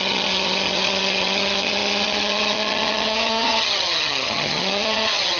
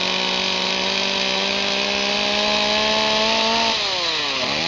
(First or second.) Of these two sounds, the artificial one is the first